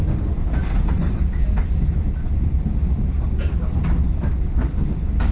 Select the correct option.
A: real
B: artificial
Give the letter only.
A